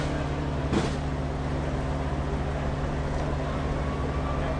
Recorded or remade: recorded